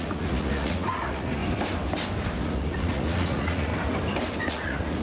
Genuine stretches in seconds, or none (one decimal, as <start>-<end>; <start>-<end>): 1.4-2.4; 3.7-4.5